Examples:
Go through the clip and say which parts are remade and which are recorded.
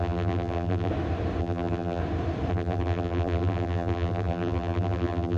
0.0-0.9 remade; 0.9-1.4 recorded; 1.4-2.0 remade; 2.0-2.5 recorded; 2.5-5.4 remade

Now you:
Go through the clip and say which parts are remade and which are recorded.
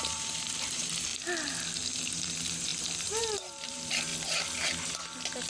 0.0-1.1 remade; 1.1-2.1 recorded; 2.1-4.1 remade; 4.1-5.5 recorded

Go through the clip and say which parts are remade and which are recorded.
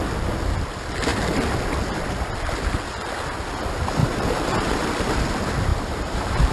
0.0-4.0 recorded; 4.0-5.1 remade; 5.1-5.7 recorded; 5.7-6.5 remade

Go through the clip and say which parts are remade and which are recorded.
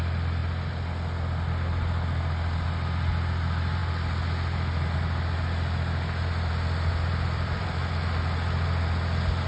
0.0-7.1 recorded; 7.1-7.8 remade; 7.8-9.5 recorded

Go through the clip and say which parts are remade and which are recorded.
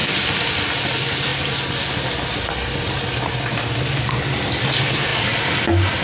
0.0-0.8 remade; 0.8-1.3 recorded; 1.3-3.2 remade; 3.2-6.0 recorded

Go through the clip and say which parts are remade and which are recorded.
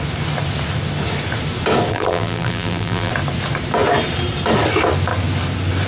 0.0-1.9 recorded; 1.9-3.1 remade; 3.1-5.9 recorded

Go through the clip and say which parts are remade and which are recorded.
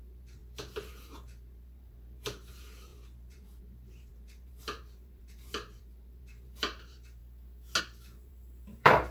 0.0-0.4 remade; 0.4-0.9 recorded; 0.9-7.2 remade; 7.2-7.8 recorded; 7.8-9.1 remade